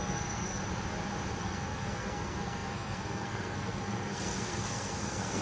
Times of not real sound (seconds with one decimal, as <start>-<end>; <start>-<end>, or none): 0.0-0.6; 1.4-5.4